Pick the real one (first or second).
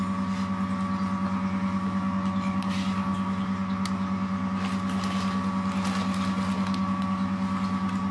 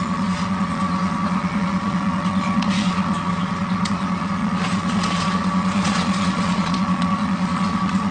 first